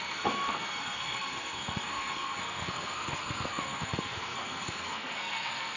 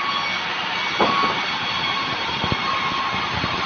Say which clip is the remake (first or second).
first